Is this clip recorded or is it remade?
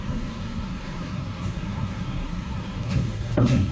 remade